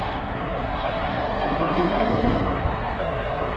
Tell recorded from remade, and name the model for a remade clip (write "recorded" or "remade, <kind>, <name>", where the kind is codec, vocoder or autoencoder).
remade, codec, SNAC